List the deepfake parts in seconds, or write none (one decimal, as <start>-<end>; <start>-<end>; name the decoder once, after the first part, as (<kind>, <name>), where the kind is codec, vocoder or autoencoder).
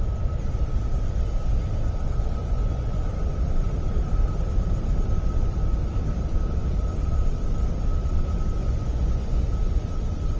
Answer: 2.4-3.0 (vocoder, Vocos); 8.6-9.4